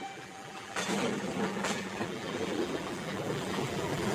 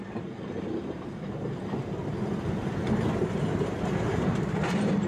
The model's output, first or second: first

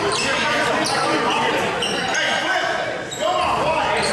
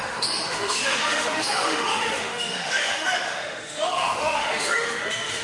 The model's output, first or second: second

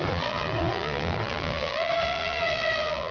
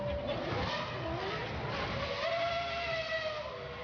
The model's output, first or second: first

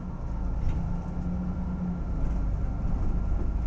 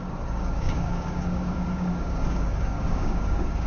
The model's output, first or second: second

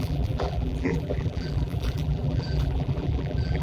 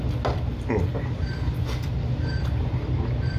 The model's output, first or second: first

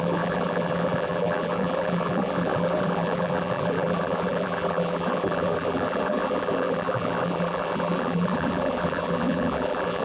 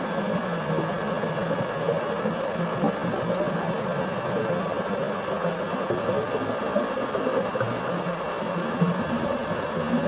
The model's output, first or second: first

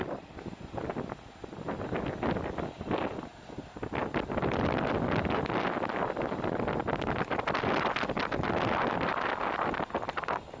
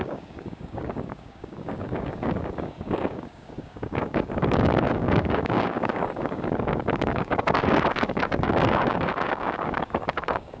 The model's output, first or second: second